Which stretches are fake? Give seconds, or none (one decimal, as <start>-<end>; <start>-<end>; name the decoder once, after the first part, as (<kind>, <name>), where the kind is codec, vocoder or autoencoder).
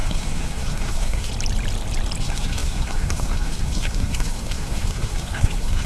0.0-1.3 (codec, SNAC); 2.2-5.9